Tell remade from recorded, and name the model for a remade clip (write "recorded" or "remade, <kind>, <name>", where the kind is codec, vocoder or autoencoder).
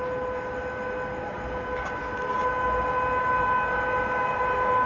recorded